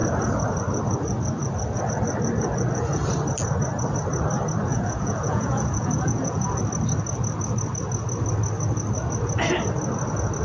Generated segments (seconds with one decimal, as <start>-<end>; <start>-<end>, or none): 4.7-6.6